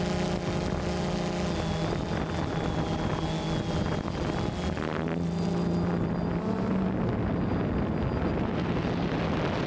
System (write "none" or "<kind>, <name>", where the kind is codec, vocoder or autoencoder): none